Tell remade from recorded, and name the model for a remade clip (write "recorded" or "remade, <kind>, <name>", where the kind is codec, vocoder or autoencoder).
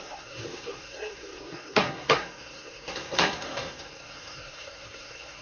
remade, codec, SNAC